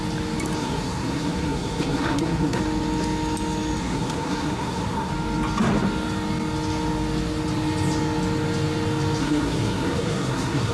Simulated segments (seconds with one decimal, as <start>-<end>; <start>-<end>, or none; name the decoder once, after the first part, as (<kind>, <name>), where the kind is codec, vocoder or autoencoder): 0.6-2.6 (codec, SNAC); 3.8-5.1; 9.2-10.7